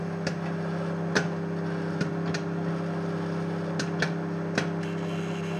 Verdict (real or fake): real